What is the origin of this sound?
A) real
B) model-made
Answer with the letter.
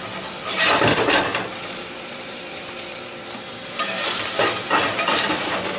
B